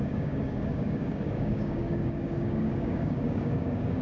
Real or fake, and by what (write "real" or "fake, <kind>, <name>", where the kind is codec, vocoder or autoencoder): fake, codec, DAC